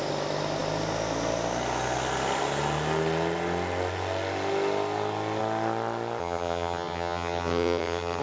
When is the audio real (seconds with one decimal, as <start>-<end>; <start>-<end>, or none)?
0.0-6.2